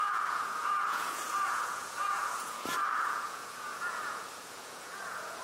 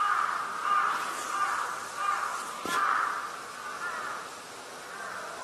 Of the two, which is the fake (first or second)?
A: first